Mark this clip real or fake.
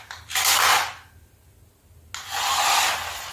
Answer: real